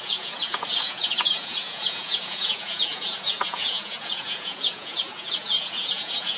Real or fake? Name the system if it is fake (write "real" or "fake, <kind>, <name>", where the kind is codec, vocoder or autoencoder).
fake, vocoder, Vocos